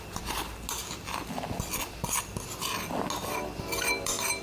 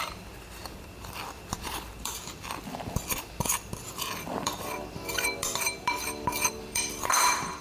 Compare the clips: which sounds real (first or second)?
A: first